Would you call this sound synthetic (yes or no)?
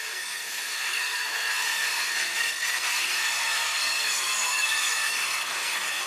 yes